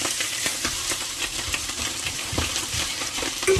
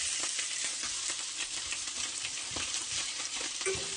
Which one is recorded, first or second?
second